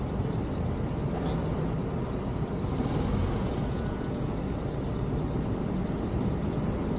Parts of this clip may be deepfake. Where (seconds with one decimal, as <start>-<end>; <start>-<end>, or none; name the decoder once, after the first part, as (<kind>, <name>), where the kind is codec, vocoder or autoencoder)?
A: 3.2-4.4 (vocoder, Vocos)